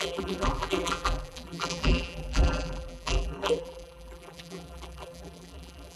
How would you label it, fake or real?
fake